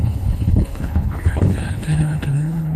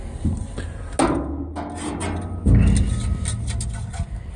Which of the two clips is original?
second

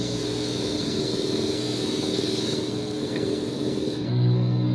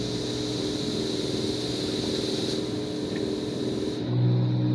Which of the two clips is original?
second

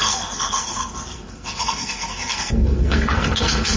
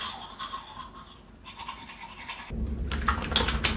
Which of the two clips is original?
second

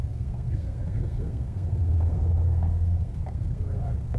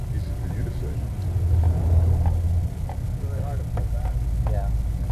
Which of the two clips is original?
second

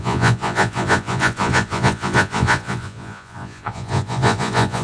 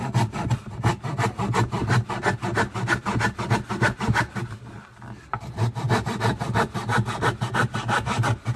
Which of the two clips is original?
second